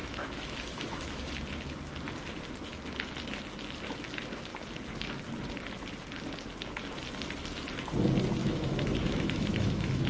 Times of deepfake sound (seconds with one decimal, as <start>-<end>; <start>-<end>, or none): 0.0-1.3; 8.4-10.1